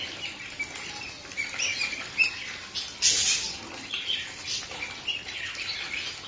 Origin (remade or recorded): recorded